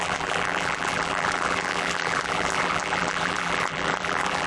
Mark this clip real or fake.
fake